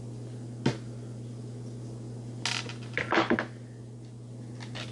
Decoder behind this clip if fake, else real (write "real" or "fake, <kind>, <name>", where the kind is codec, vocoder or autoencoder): real